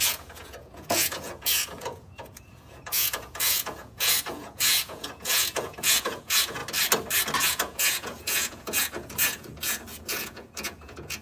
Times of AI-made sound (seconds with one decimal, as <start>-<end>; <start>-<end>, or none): 0.0-6.6; 7.4-11.2